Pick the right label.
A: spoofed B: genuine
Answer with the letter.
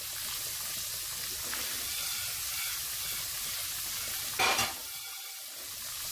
B